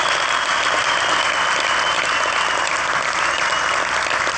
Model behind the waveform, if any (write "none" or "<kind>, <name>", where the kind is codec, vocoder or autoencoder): none